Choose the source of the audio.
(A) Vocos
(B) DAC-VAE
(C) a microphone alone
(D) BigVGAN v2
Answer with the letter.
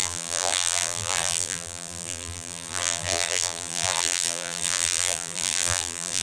D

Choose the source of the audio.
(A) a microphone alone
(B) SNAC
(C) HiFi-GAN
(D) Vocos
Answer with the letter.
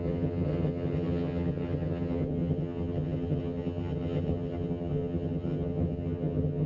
C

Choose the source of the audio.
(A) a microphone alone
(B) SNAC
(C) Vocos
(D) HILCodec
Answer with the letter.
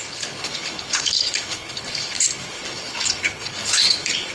D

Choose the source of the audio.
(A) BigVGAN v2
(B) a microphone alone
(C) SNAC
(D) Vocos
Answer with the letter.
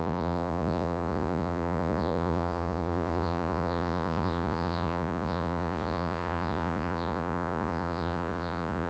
D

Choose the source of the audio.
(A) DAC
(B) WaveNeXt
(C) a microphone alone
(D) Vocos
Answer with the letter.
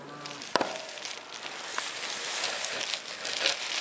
C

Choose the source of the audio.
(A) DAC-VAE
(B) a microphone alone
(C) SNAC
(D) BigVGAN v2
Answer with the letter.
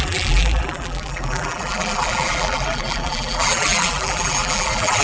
D